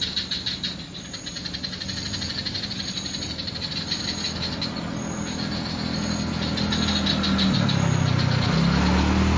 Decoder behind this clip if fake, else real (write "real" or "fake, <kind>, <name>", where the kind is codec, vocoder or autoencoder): real